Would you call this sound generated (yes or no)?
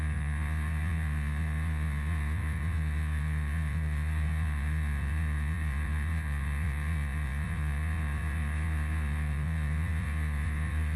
yes